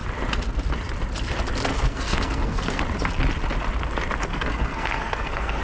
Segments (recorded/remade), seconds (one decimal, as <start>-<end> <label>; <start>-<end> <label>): 0.0-1.7 recorded; 1.7-2.8 remade; 2.8-4.3 recorded; 4.3-5.6 remade